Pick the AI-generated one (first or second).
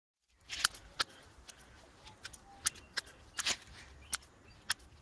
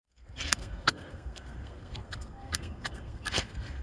second